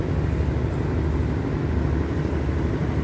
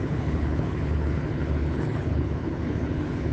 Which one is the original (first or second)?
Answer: first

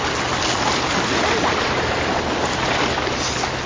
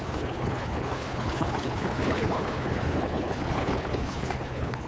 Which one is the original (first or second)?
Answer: first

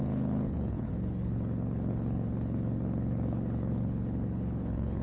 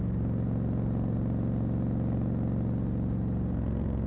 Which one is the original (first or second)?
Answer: second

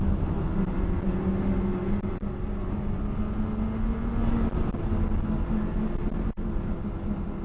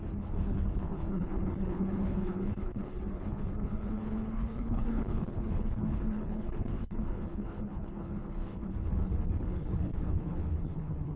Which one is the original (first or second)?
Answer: first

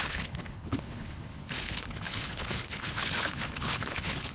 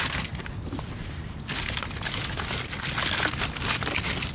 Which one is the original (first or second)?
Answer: second